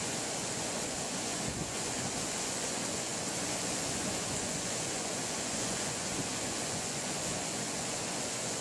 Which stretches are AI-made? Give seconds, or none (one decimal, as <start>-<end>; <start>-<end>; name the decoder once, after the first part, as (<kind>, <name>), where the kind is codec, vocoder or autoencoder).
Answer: 0.0-8.6 (vocoder, Vocos)